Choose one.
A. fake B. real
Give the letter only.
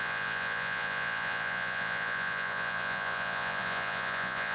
A